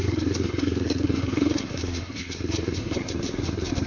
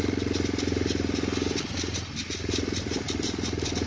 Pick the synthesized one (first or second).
first